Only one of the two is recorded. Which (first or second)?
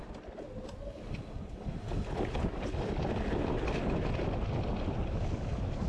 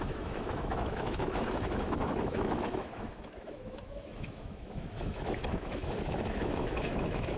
first